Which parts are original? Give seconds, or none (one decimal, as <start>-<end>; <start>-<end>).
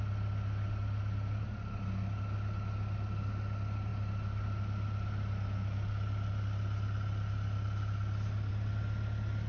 0.0-9.5